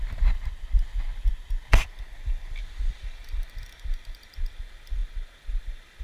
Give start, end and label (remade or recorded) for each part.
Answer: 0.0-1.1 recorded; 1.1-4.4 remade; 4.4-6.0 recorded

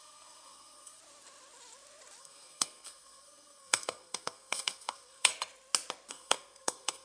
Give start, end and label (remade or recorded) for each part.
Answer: 0.0-1.0 remade; 1.0-2.2 recorded; 2.2-5.3 remade; 5.3-6.1 recorded; 6.1-7.0 remade

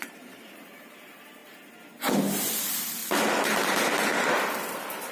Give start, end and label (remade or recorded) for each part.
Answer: 0.0-1.4 remade; 1.4-2.6 recorded; 2.6-3.0 remade; 3.0-5.1 recorded

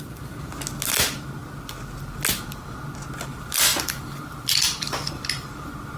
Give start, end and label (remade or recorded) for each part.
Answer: 0.0-3.7 recorded; 3.7-5.1 remade; 5.1-6.0 recorded

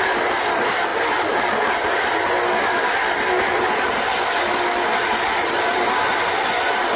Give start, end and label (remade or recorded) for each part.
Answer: 0.0-7.0 recorded

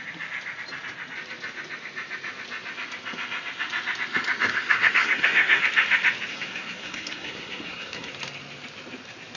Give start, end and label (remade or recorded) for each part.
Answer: 0.0-4.4 recorded; 4.4-5.6 remade; 5.6-6.3 recorded; 6.3-8.1 remade; 8.1-9.4 recorded

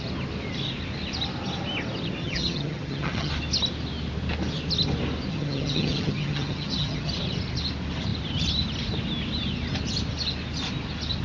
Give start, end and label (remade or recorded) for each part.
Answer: 0.0-2.2 recorded; 2.2-3.3 remade; 3.3-5.3 recorded; 5.3-7.1 remade; 7.1-11.2 recorded